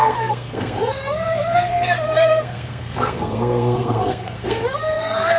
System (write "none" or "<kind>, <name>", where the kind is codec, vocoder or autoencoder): codec, SNAC